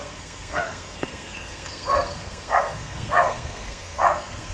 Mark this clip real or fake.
fake